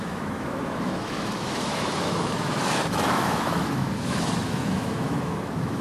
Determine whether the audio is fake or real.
fake